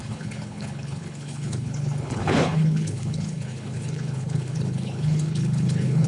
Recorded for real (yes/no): no